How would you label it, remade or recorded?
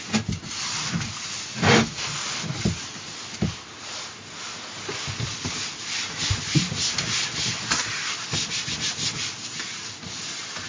recorded